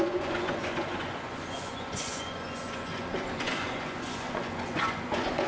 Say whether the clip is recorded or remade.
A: remade